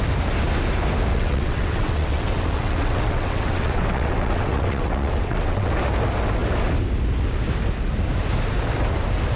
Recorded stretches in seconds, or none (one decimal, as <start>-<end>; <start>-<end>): 0.0-1.1; 5.7-9.3